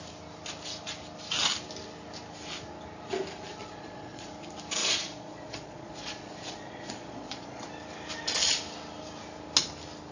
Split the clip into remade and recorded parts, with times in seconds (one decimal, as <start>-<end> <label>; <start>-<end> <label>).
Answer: 0.0-3.6 recorded; 3.6-4.3 remade; 4.3-4.8 recorded; 4.8-7.7 remade; 7.7-10.1 recorded